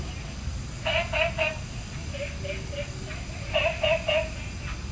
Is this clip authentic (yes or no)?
yes